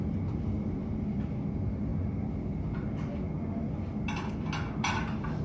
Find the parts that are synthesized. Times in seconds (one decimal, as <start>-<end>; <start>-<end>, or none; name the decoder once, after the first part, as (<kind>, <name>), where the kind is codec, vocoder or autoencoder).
none